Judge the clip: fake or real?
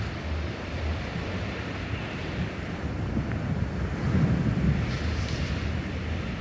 fake